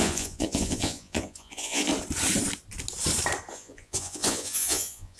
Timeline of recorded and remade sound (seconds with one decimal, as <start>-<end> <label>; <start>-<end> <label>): 0.0-1.9 remade; 1.9-3.5 recorded; 3.5-5.2 remade